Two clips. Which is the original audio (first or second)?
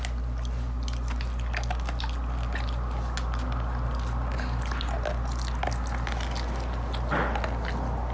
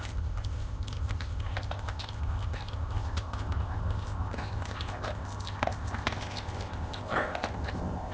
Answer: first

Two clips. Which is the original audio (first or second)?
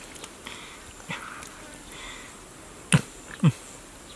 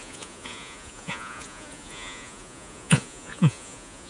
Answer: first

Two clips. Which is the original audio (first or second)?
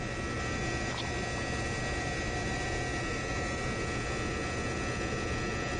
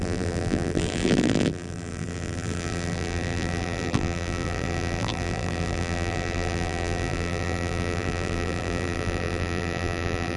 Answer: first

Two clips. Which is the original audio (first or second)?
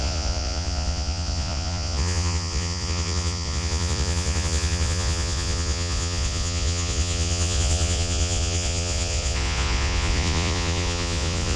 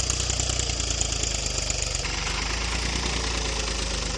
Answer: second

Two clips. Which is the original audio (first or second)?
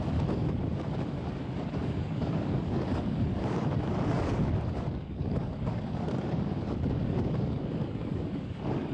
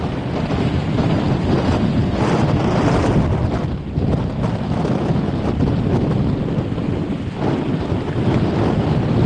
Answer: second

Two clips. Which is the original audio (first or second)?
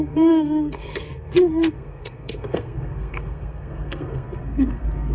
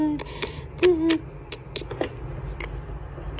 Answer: second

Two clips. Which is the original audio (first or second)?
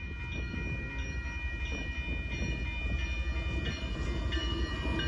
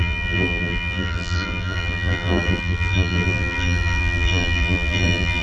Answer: first